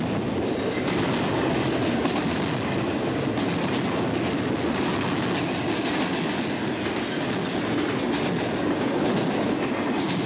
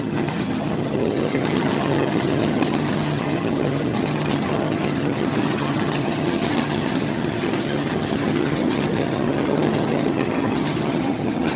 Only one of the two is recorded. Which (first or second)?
first